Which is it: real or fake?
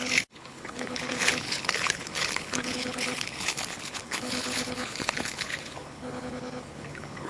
fake